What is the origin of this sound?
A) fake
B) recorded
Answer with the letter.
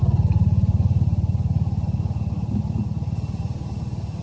B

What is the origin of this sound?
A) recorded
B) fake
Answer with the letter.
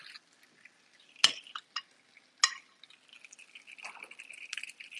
A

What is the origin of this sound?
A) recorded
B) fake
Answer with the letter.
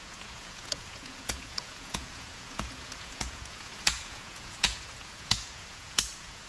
B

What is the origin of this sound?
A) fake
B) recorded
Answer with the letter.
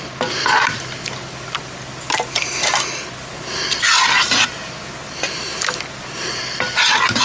B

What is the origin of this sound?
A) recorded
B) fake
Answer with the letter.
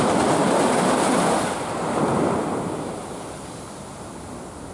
A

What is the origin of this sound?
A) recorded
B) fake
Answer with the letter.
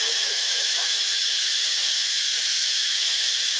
B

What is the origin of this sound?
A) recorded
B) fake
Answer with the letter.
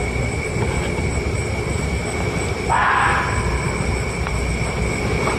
A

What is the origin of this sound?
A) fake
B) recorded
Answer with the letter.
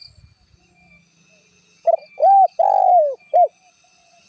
B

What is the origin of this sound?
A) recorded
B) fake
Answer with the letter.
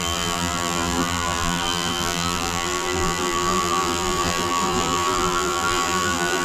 B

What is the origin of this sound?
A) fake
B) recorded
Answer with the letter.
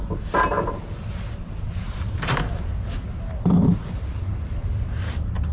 B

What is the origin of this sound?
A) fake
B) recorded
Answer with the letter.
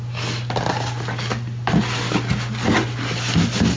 B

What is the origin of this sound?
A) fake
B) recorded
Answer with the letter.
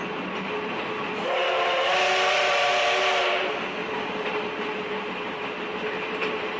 B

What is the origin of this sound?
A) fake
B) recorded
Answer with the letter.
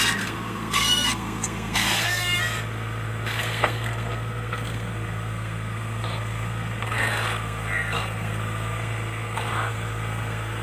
A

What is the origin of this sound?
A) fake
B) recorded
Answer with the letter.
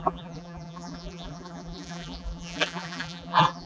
A